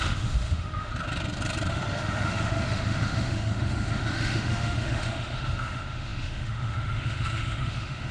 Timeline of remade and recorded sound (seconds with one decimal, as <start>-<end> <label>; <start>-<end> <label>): 0.0-0.9 remade; 0.9-1.7 recorded; 1.7-8.1 remade